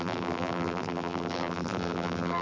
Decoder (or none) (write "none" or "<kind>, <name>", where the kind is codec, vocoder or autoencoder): vocoder, BigVGAN v2